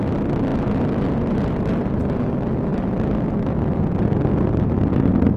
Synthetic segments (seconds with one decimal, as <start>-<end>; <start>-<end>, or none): none